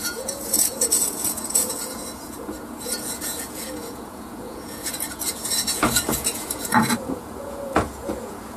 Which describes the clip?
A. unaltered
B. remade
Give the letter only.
B